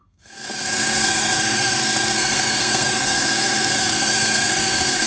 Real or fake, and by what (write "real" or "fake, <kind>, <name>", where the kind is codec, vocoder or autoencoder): fake, codec, SNAC